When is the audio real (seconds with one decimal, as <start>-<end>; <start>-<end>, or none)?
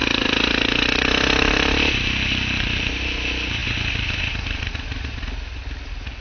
0.0-6.2